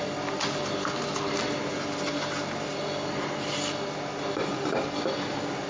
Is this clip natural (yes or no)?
yes